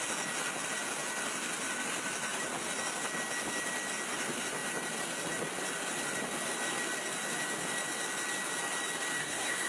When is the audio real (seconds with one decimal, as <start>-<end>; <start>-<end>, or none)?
0.0-9.2